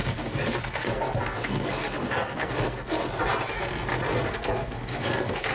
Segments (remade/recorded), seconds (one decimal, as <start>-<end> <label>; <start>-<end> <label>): 0.0-3.0 remade; 3.0-4.3 recorded; 4.3-5.5 remade